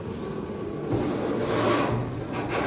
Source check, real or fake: real